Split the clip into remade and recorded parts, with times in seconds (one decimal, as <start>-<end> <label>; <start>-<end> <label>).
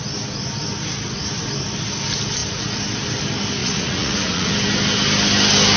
0.0-3.6 recorded; 3.6-4.5 remade; 4.5-5.8 recorded